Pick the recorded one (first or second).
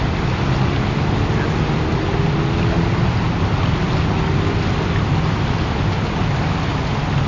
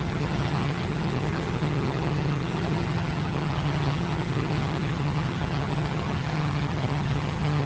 first